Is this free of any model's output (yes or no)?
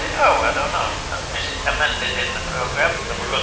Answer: yes